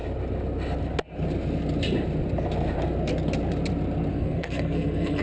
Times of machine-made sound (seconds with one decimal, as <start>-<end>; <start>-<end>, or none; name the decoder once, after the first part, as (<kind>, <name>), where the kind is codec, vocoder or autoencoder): 4.1-5.2 (codec, SNAC)